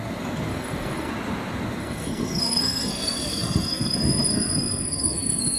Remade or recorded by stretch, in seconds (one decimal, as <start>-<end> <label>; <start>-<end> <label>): 0.0-0.5 recorded; 0.5-1.1 remade; 1.1-1.8 recorded; 1.8-5.6 remade